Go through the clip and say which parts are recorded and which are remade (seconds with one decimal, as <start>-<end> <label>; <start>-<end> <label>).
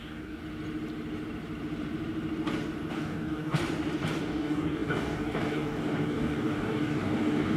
0.0-0.4 remade; 0.4-2.9 recorded; 2.9-3.6 remade; 3.6-4.2 recorded; 4.2-7.6 remade